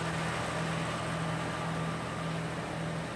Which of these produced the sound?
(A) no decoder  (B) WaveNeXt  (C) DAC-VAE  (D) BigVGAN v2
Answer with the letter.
A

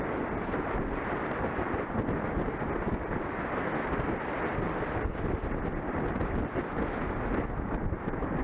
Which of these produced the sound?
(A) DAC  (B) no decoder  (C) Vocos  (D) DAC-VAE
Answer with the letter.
B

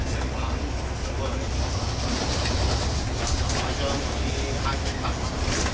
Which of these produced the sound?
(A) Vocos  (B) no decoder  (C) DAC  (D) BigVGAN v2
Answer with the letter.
B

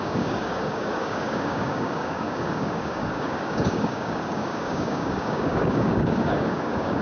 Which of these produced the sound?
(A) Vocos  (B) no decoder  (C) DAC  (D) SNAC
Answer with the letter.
C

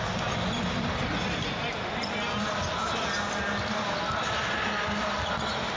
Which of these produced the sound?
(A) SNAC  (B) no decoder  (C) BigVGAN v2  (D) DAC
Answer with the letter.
B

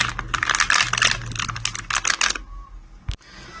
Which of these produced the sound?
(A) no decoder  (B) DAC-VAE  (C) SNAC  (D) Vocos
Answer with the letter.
A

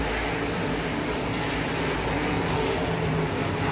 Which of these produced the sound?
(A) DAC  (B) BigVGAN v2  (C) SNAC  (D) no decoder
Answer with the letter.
B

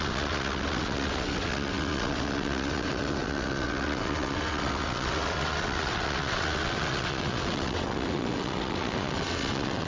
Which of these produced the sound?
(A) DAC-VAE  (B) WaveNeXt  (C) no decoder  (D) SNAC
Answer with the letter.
B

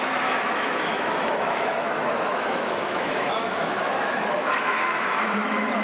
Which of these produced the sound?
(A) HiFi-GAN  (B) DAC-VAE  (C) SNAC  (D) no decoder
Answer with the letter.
B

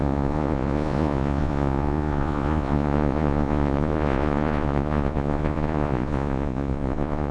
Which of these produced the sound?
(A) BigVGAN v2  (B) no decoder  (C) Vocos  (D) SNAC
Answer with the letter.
C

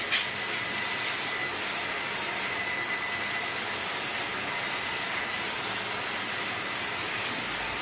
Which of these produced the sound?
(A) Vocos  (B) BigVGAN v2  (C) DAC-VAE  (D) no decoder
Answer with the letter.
D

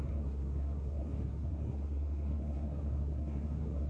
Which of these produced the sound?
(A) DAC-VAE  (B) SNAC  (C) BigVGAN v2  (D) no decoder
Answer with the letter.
B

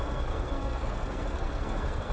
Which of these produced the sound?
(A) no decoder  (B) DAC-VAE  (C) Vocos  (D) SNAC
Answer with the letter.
D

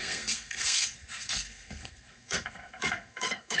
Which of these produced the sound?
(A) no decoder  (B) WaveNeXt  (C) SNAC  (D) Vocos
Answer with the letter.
C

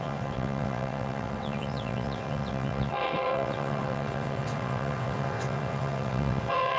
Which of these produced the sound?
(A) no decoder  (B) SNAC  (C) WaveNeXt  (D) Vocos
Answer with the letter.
C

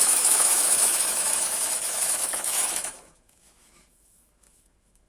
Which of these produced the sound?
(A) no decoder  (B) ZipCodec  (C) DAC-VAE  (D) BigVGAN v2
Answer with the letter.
C